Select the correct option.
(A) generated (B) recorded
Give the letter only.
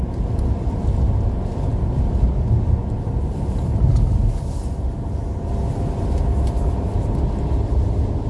B